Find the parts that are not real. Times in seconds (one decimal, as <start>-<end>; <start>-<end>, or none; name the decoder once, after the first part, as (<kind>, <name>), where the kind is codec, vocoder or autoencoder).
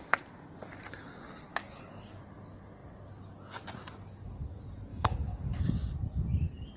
1.5-2.2 (codec, DAC); 4.9-5.6